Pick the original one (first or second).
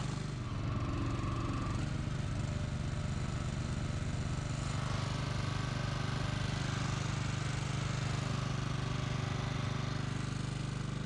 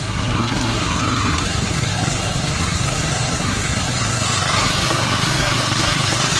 first